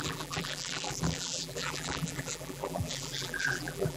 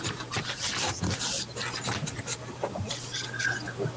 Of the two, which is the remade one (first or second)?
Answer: first